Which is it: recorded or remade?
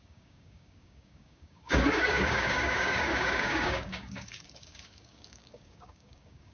remade